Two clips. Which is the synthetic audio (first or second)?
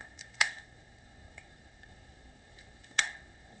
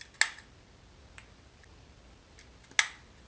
first